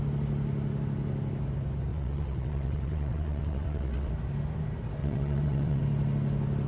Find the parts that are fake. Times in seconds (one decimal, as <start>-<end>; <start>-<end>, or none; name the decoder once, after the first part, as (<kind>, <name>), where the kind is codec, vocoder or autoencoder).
1.9-4.1 (vocoder, WaveNeXt); 5.0-5.8